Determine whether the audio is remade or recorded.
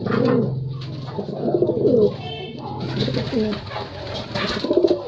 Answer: recorded